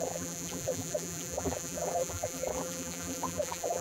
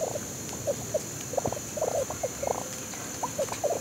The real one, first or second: second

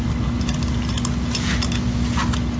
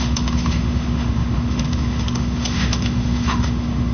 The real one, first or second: first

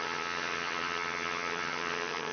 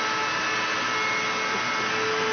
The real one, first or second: second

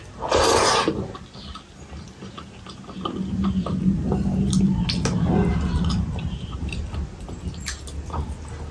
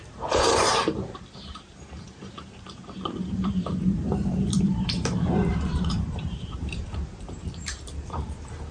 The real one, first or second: first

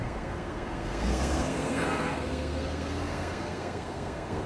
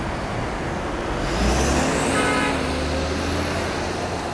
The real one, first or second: second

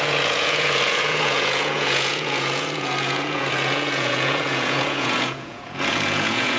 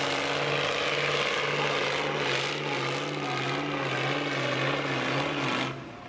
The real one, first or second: second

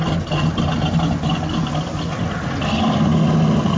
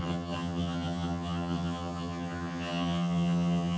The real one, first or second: first